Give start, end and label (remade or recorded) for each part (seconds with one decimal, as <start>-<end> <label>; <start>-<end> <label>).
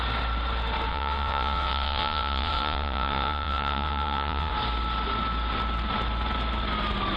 0.0-0.9 recorded; 0.9-4.5 remade; 4.5-7.2 recorded